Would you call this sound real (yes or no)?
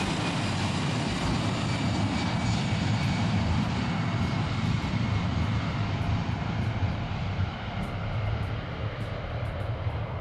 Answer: no